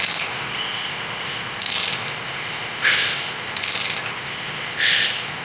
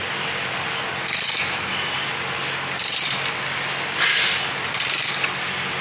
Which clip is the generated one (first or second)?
first